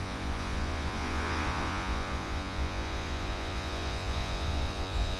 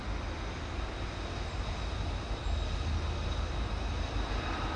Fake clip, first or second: first